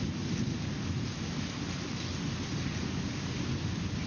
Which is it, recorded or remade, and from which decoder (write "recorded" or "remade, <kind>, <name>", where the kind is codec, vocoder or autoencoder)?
recorded